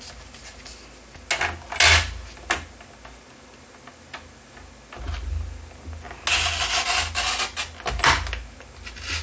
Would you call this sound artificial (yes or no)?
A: no